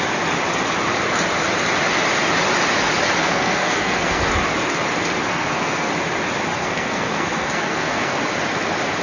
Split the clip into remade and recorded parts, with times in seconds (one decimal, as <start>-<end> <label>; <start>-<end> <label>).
0.0-3.2 recorded; 3.2-4.3 remade; 4.3-5.3 recorded; 5.3-5.9 remade; 5.9-6.6 recorded; 6.6-8.2 remade; 8.2-9.0 recorded